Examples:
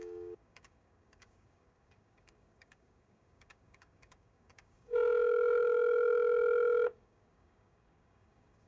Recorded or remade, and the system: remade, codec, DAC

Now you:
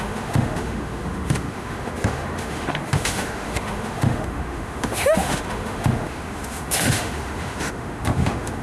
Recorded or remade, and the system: remade, autoencoder, DAC-VAE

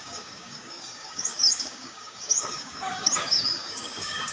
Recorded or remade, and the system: remade, codec, DAC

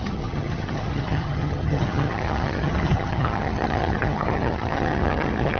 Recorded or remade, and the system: remade, vocoder, HiFi-GAN